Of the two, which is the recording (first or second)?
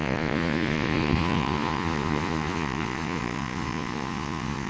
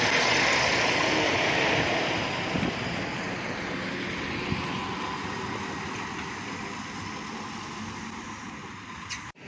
second